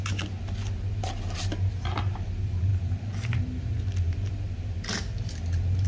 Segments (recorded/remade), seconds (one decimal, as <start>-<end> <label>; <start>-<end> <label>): 0.0-5.9 recorded